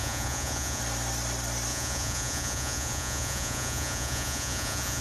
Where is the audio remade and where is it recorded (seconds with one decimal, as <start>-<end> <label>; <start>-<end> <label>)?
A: 0.0-0.8 remade; 0.8-1.7 recorded; 1.7-5.0 remade